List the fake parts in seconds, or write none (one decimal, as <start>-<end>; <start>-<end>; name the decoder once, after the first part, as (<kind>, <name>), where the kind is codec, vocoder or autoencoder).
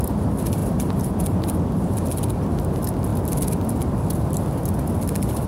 none